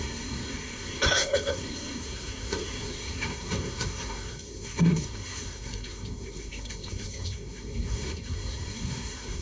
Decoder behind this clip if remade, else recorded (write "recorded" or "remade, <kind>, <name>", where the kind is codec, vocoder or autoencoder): remade, codec, SNAC